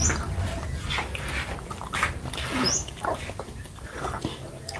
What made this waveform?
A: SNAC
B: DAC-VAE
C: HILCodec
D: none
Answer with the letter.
D